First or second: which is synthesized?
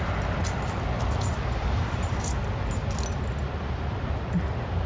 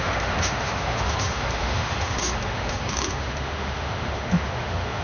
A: second